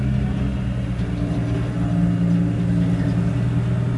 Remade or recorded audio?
recorded